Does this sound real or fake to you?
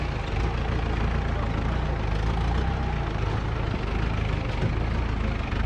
real